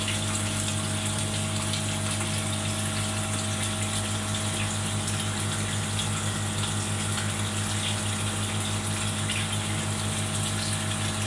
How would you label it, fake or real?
real